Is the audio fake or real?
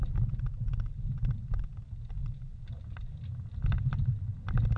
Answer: real